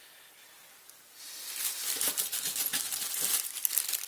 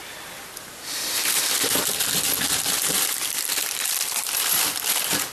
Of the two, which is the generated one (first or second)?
second